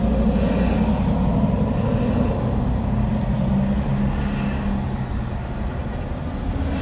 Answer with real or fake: real